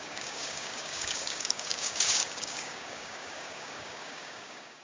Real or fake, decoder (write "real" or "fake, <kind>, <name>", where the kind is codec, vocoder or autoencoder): fake, codec, DAC